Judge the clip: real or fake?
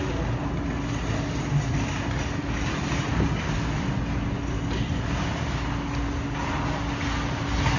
real